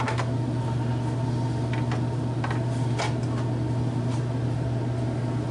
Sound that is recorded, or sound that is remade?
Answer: recorded